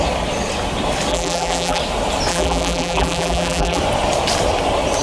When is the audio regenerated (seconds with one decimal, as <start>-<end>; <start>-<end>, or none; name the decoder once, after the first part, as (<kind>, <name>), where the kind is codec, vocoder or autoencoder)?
1.1-1.8 (vocoder, BigVGAN v2); 2.3-3.8